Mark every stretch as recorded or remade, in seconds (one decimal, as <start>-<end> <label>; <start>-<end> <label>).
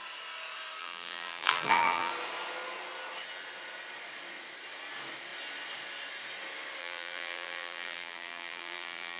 0.0-0.8 recorded; 0.8-2.1 remade; 2.1-6.8 recorded; 6.8-9.2 remade